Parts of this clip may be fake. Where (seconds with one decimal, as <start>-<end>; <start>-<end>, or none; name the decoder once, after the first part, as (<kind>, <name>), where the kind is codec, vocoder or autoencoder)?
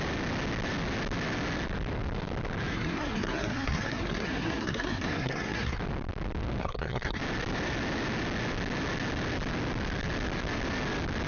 2.7-5.8 (codec, SNAC); 6.6-7.2